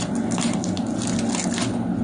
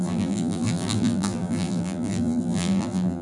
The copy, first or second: second